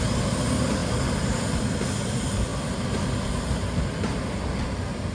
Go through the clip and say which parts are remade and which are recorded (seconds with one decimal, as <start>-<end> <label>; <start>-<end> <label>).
0.0-5.1 recorded